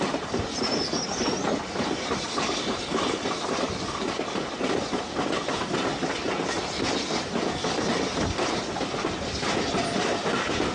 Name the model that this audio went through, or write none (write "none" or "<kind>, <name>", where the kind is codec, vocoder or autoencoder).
none